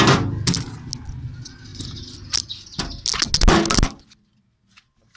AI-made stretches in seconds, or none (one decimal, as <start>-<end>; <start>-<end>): none